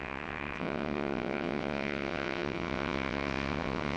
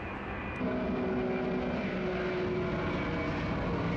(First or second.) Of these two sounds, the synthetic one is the first